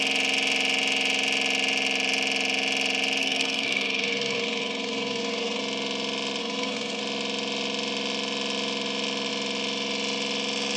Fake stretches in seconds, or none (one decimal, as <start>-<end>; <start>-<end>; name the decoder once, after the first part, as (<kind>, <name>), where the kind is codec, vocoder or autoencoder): 3.2-5.6 (codec, SNAC); 6.4-7.0